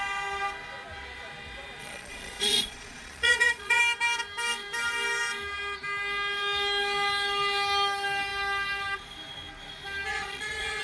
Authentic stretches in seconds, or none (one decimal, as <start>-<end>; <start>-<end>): 0.0-1.8; 3.8-10.1